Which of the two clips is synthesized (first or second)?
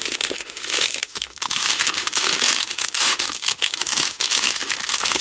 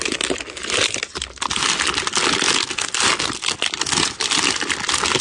first